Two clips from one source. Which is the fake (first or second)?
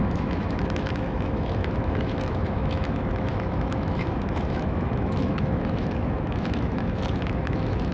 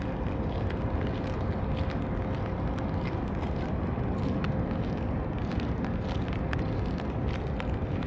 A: first